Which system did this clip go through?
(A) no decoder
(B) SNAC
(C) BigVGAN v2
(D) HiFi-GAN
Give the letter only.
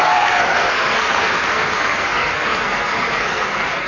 B